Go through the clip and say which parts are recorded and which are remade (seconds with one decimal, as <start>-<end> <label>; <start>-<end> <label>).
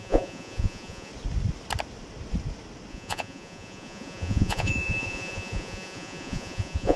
0.0-1.1 remade; 1.1-2.9 recorded; 2.9-7.0 remade